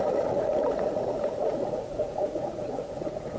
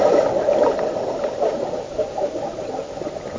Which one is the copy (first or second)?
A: first